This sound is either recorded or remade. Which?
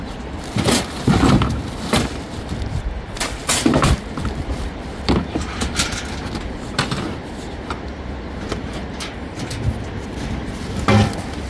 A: remade